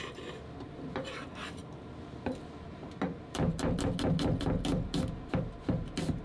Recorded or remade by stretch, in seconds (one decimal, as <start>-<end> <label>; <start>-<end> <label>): 0.0-1.6 remade; 1.6-5.3 recorded; 5.3-6.2 remade